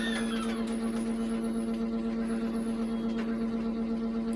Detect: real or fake real